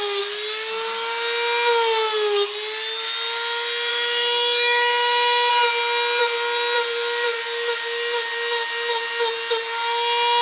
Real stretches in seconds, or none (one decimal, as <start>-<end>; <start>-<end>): 0.0-3.9; 5.5-10.4